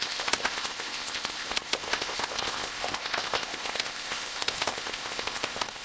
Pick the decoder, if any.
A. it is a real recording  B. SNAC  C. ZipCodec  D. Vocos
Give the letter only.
C